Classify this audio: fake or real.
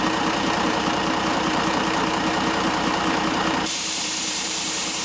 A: fake